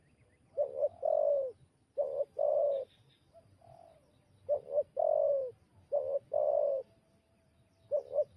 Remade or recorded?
recorded